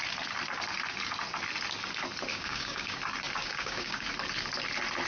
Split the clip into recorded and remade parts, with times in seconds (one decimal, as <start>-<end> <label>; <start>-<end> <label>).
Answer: 0.0-2.3 recorded; 2.3-3.0 remade; 3.0-3.4 recorded; 3.4-4.1 remade; 4.1-5.1 recorded